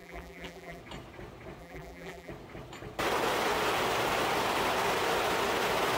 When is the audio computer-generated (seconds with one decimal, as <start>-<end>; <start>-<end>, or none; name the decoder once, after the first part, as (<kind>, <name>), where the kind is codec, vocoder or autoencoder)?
0.0-0.8 (vocoder, BigVGAN v2); 1.6-2.3